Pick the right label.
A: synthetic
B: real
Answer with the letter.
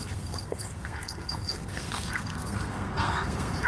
A